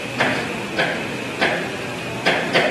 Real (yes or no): yes